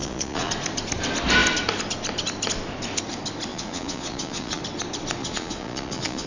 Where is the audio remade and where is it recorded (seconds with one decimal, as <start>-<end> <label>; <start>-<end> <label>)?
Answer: 0.0-0.5 remade; 0.5-3.5 recorded; 3.5-4.6 remade; 4.6-5.2 recorded; 5.2-6.3 remade